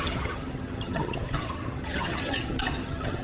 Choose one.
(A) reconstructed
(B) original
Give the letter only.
A